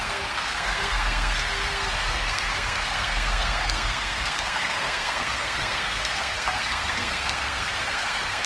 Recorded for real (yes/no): no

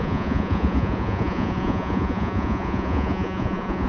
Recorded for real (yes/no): no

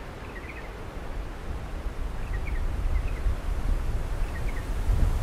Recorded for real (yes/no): yes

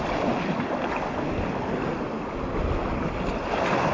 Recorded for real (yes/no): yes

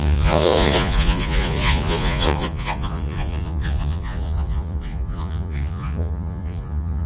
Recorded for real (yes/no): no